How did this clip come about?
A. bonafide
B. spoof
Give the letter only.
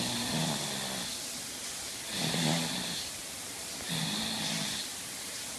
A